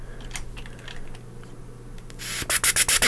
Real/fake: real